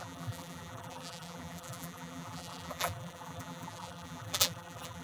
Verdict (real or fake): fake